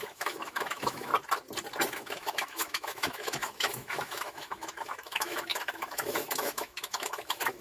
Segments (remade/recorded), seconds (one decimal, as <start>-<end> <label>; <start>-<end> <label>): 0.0-1.1 remade; 1.1-1.9 recorded; 1.9-7.6 remade